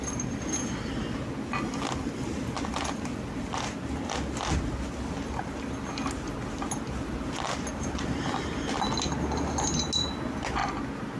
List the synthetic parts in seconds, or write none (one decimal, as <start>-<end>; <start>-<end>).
none